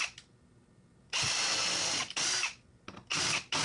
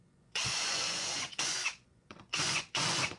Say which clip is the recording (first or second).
first